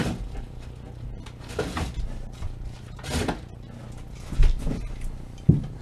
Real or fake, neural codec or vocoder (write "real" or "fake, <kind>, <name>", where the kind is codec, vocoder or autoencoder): real